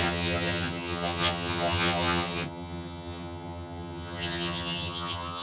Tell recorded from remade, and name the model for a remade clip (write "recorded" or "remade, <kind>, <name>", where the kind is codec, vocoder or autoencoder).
remade, vocoder, HiFi-GAN